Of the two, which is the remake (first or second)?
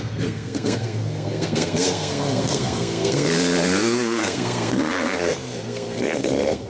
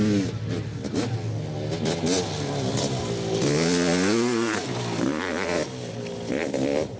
first